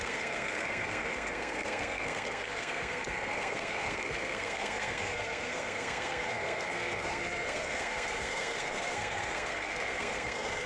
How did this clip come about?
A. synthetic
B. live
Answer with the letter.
A